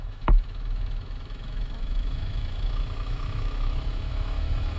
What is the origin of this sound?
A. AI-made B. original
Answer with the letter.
A